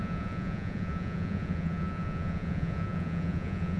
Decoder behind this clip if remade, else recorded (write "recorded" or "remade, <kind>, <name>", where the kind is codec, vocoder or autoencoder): remade, vocoder, Vocos